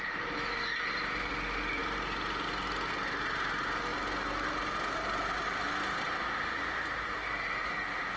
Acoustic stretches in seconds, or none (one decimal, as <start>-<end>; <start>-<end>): 0.0-8.2